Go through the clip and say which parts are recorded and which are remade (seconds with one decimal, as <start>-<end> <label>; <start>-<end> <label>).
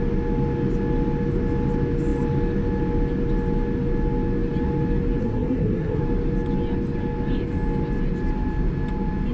0.0-5.2 recorded; 5.2-6.0 remade; 6.0-9.3 recorded